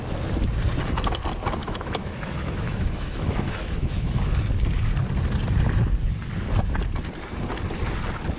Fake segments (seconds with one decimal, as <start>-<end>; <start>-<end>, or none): 1.6-4.2